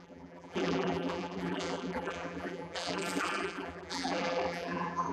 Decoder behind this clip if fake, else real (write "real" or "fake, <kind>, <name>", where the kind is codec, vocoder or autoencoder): fake, vocoder, BigVGAN v2